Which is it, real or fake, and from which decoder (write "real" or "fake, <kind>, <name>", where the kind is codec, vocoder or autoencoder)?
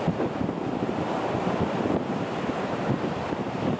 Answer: real